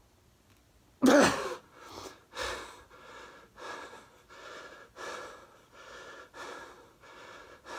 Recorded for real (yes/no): yes